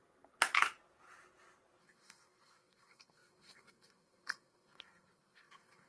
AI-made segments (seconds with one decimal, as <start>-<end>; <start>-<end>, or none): 1.8-5.9